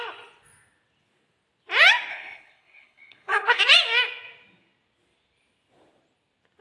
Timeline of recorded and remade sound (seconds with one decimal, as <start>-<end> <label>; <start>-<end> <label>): 0.0-2.1 recorded; 2.1-3.6 remade; 3.6-6.6 recorded